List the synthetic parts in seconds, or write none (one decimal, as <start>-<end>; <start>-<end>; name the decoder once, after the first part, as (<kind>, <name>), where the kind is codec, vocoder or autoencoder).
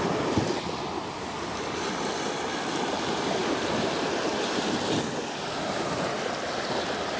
none